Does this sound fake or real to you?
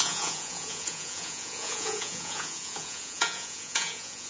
fake